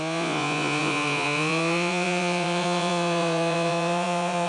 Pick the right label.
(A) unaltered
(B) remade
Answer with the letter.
B